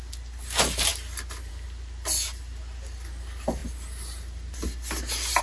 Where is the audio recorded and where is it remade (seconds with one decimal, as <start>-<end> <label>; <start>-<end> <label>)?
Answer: 0.0-5.4 recorded